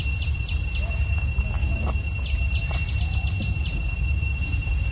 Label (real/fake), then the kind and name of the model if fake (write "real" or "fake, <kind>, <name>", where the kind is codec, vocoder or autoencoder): real